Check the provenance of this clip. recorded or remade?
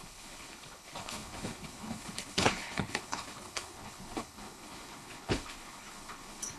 remade